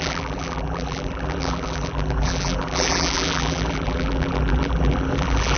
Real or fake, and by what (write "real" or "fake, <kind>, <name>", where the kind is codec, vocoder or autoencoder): fake, vocoder, BigVGAN v2